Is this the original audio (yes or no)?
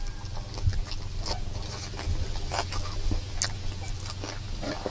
yes